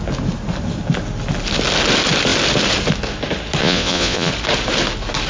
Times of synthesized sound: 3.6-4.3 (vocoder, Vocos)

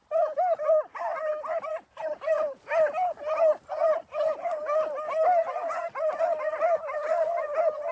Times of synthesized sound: 3.5-4.2 (vocoder, BigVGAN v2)